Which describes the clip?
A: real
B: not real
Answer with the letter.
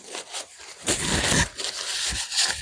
A